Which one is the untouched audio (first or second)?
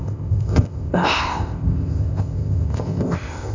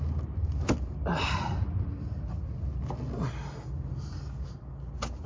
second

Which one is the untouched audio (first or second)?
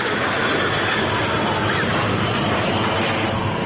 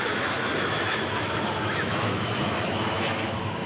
first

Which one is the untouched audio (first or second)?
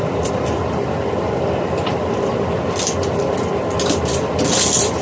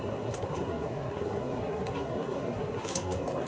first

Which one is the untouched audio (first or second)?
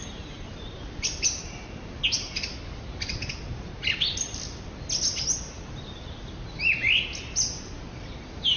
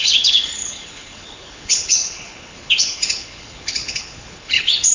first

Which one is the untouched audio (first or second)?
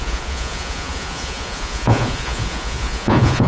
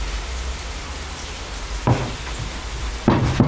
second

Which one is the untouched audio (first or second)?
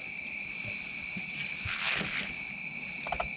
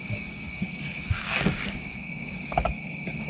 first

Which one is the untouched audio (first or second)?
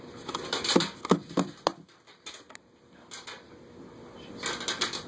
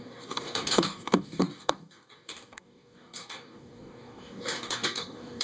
first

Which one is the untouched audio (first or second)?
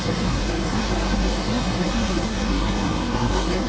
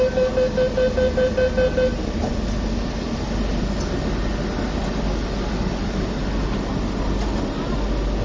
second